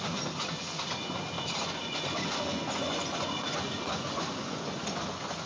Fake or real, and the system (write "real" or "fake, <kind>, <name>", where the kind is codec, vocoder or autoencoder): fake, vocoder, Vocos